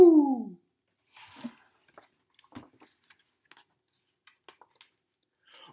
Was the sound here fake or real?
real